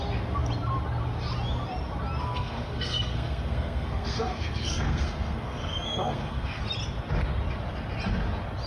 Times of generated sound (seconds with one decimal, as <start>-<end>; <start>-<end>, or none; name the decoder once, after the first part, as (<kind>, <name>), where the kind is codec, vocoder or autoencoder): 2.2-6.6 (codec, SNAC)